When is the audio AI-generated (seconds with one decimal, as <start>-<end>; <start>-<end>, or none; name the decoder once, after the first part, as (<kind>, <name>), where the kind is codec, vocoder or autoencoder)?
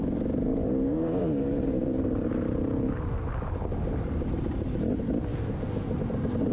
0.5-2.9 (vocoder, BigVGAN v2); 5.3-6.5